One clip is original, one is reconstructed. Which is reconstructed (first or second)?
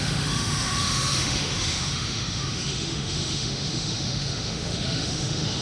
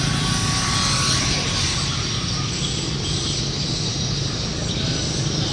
first